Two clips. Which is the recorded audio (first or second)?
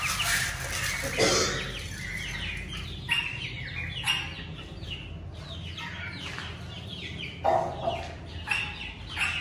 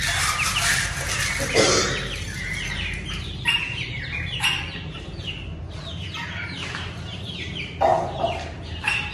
first